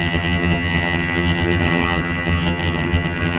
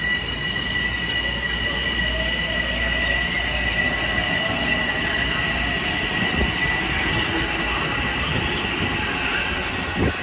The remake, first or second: first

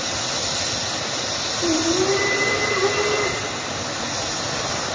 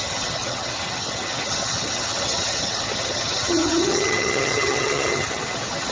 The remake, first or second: second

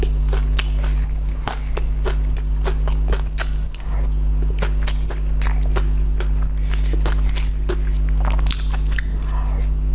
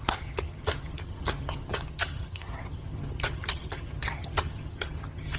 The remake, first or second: second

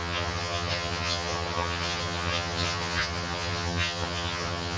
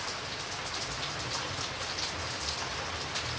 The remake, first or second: first